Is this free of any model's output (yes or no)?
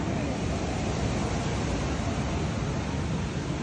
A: yes